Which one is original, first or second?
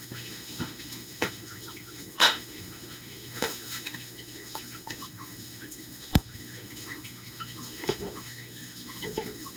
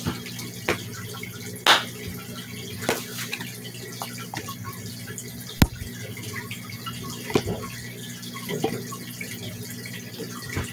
second